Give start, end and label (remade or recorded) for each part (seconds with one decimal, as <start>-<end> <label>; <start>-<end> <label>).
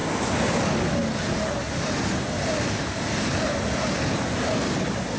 0.0-5.2 recorded